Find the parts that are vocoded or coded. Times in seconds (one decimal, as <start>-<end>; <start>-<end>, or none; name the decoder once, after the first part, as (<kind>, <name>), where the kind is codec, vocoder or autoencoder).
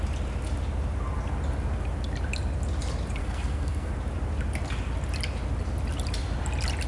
3.2-3.9 (codec, SNAC)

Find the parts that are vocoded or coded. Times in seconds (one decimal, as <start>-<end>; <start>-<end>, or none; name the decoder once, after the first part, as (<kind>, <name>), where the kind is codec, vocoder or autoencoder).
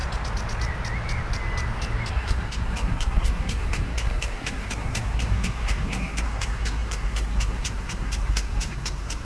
2.1-9.2 (codec, SNAC)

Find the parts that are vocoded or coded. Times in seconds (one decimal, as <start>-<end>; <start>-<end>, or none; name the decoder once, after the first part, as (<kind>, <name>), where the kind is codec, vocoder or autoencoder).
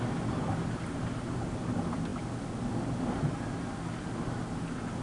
none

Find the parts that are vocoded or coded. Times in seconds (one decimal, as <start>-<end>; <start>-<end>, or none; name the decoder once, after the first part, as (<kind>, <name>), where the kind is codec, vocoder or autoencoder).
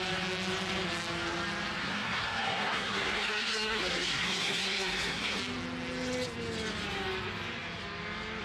1.8-5.4 (codec, SNAC)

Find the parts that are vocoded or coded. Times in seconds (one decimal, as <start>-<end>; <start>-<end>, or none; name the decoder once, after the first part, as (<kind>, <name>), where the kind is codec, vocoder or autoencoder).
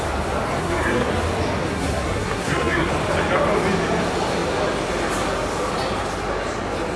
0.6-1.1 (codec, SNAC); 1.7-2.9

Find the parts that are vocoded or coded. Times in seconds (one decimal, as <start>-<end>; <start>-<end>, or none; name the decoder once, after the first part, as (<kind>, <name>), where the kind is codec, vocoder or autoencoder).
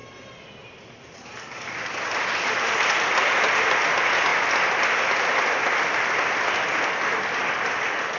none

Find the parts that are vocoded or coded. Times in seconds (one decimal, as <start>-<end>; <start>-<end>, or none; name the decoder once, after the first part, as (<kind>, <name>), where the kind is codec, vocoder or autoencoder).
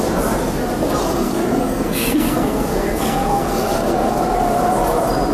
1.0-4.2 (codec, SNAC)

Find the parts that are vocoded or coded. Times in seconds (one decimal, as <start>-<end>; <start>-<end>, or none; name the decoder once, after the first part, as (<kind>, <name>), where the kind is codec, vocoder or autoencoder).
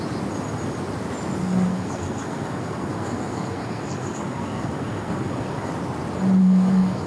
1.4-5.7 (codec, SNAC); 6.4-7.1